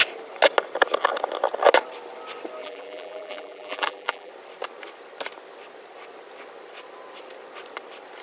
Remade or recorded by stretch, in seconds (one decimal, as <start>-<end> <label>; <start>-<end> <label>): 0.0-2.6 recorded; 2.6-4.3 remade; 4.3-8.2 recorded